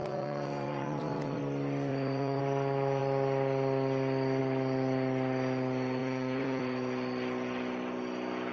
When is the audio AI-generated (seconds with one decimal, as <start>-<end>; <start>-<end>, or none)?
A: 0.0-1.4; 1.9-2.4; 6.0-6.6